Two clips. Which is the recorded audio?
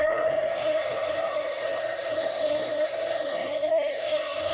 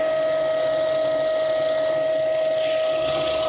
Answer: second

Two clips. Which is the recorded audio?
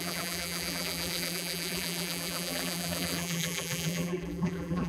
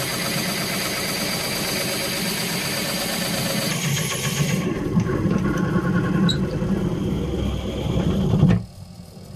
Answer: second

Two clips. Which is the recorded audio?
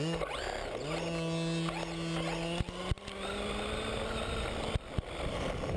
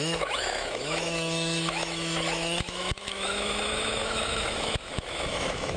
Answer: first